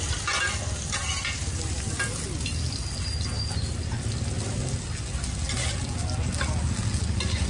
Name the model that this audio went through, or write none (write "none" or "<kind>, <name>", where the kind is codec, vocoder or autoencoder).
none